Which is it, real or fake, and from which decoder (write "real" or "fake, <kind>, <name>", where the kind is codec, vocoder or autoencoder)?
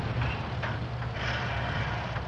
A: real